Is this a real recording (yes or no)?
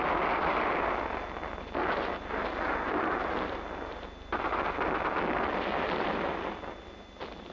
yes